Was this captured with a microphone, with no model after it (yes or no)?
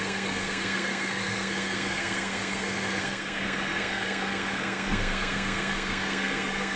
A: no